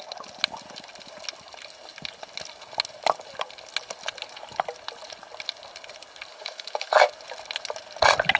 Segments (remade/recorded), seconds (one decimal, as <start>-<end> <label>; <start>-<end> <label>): 0.0-6.3 recorded; 6.3-7.1 remade; 7.1-8.4 recorded